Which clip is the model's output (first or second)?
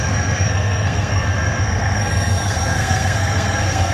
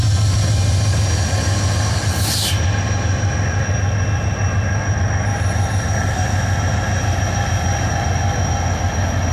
first